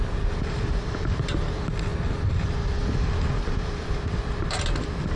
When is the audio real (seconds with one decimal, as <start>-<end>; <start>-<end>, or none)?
0.0-5.2